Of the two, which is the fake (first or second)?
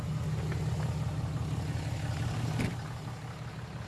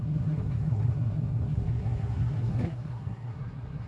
second